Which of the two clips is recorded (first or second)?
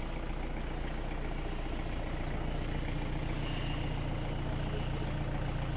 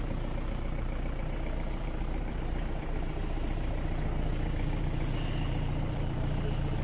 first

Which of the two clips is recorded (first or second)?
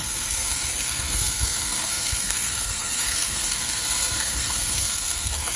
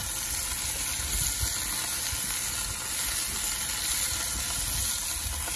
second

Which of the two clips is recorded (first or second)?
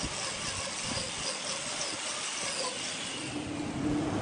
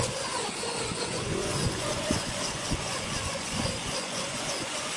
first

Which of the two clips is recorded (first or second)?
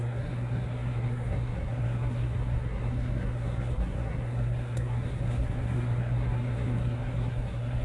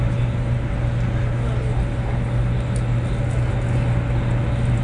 second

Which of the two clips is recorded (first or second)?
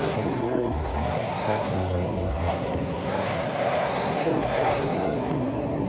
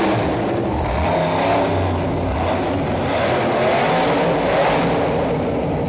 second